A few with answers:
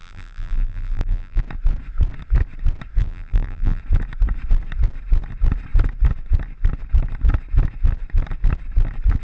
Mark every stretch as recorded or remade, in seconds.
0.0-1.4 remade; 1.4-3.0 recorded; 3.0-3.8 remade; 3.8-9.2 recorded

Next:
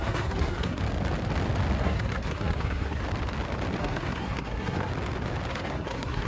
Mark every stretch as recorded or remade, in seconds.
0.0-0.8 remade; 0.8-1.8 recorded; 1.8-3.0 remade; 3.0-3.8 recorded; 3.8-4.9 remade; 4.9-5.5 recorded; 5.5-6.3 remade

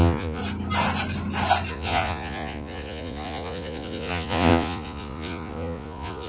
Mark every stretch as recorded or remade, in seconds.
0.0-0.4 remade; 0.4-1.7 recorded; 1.7-6.3 remade

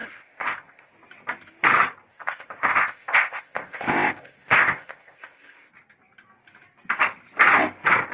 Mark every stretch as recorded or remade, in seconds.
0.0-0.9 remade; 0.9-2.1 recorded; 2.1-5.7 remade; 5.7-8.1 recorded

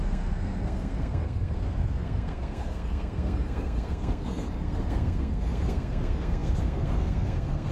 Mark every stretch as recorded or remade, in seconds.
0.0-7.7 remade

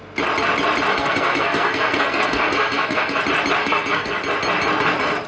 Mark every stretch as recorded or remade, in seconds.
0.0-0.9 recorded; 0.9-3.2 remade; 3.2-3.6 recorded; 3.6-4.2 remade; 4.2-5.3 recorded

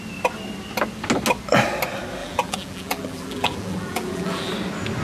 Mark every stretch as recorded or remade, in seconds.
0.0-2.2 recorded; 2.2-4.5 remade; 4.5-5.0 recorded